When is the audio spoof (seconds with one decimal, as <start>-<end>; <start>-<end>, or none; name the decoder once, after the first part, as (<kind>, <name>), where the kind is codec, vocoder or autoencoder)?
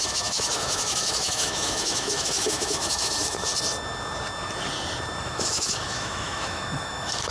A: 0.0-3.5 (autoencoder, DAC-VAE); 5.2-7.3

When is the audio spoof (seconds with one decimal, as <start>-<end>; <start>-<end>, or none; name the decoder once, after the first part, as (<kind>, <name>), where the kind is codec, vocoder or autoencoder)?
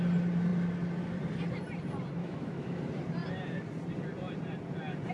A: 2.2-2.8 (autoencoder, DAC-VAE)